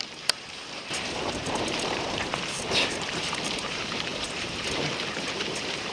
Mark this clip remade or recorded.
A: remade